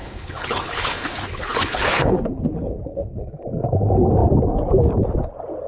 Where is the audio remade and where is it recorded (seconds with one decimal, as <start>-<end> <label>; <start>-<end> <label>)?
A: 0.0-3.4 remade; 3.4-5.7 recorded